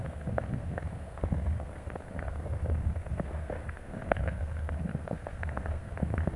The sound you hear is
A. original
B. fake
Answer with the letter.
B